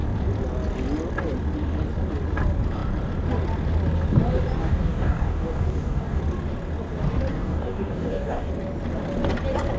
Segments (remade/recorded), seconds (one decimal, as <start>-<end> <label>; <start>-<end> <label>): 0.0-4.6 recorded; 4.6-6.2 remade; 6.2-7.3 recorded; 7.3-8.5 remade; 8.5-9.8 recorded